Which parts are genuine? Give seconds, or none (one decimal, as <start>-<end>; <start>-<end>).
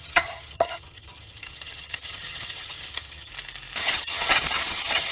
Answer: 3.3-3.8